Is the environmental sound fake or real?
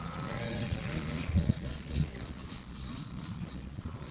fake